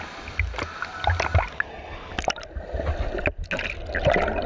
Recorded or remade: recorded